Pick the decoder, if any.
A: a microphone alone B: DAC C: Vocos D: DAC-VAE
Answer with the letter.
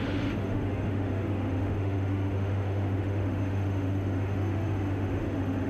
D